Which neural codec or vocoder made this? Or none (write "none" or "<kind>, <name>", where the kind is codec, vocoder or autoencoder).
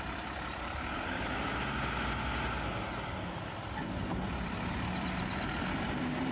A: none